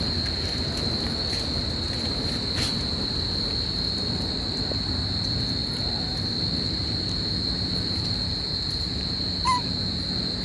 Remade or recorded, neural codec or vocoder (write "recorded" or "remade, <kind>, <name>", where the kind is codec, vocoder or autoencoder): recorded